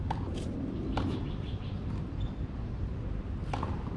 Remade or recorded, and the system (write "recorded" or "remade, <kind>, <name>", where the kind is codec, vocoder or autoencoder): remade, vocoder, BigVGAN v2